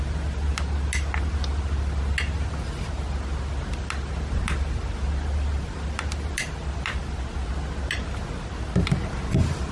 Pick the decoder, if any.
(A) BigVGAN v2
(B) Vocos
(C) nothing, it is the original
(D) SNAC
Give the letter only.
C